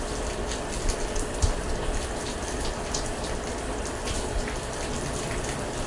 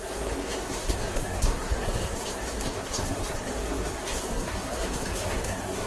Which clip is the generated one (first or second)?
second